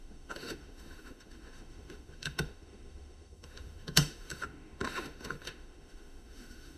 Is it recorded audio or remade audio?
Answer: remade